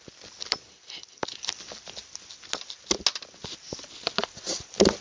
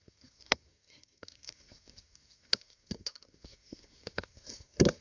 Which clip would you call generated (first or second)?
second